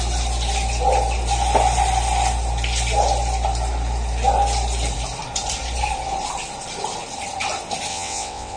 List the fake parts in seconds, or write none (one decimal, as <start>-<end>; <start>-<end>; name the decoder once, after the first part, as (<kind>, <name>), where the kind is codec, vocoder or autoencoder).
7.9-8.6 (vocoder, WaveNeXt)